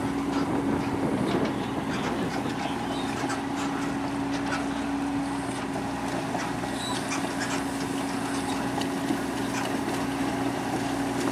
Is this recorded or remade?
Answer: recorded